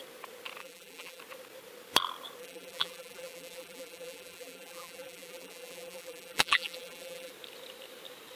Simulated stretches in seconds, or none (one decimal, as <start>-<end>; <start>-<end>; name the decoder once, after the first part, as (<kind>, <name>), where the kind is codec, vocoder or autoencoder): 0.6-1.2 (vocoder, BigVGAN v2); 2.4-7.3